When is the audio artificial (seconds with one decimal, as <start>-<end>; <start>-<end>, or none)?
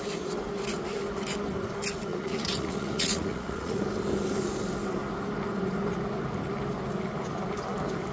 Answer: 2.1-3.8